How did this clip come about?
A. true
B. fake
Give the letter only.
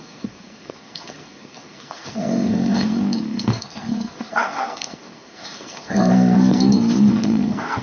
B